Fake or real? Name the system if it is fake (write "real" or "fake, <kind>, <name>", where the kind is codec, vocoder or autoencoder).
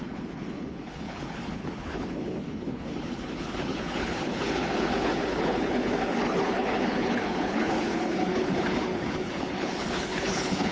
fake, codec, HILCodec